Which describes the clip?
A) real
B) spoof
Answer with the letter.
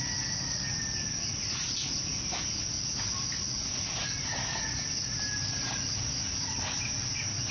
A